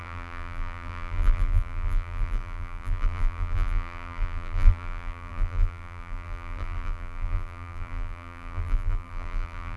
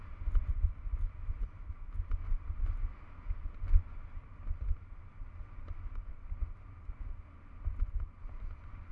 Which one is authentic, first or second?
second